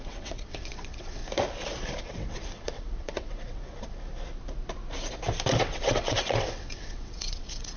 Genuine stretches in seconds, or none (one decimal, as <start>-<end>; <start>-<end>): 1.2-2.0; 4.1-5.6